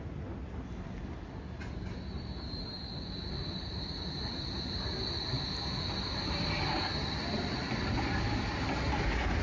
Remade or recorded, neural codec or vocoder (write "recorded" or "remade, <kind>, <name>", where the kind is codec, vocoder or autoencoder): recorded